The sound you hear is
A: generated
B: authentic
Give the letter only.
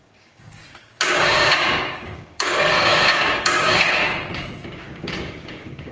A